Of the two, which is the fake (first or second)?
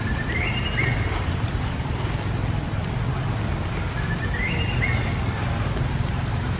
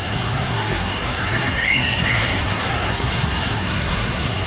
second